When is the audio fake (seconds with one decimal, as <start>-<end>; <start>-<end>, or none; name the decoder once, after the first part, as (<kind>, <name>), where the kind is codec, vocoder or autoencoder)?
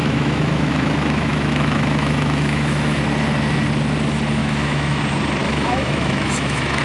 0.0-3.0 (autoencoder, DAC-VAE); 4.4-5.0; 5.4-6.8